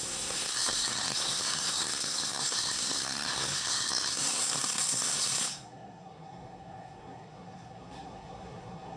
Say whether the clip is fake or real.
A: fake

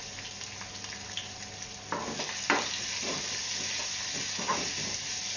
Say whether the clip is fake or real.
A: real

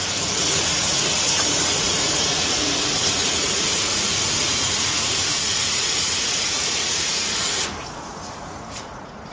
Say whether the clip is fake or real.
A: fake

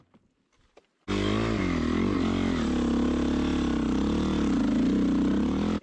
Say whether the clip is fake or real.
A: real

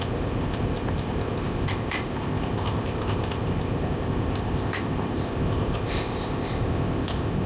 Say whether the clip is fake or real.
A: fake